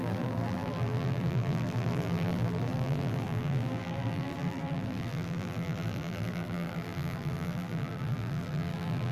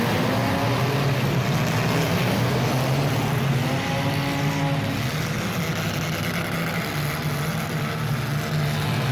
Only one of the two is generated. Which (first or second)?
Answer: first